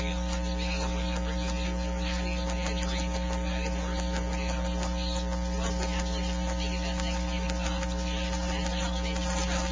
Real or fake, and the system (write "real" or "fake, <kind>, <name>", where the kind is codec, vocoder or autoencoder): real